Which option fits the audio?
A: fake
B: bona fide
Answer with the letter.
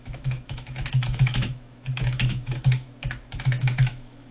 A